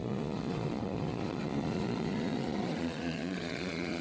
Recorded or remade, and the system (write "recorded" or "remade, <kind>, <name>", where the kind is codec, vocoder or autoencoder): remade, vocoder, Vocos